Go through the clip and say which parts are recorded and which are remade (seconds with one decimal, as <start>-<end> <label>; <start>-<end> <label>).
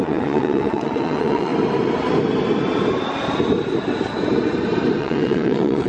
0.0-1.5 remade; 1.5-5.0 recorded; 5.0-5.9 remade